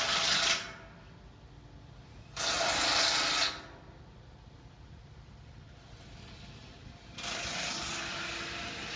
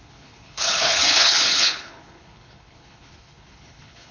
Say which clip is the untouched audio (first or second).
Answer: first